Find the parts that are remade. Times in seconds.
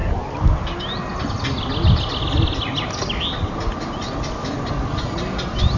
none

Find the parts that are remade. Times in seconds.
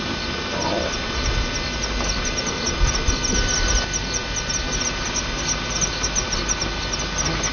none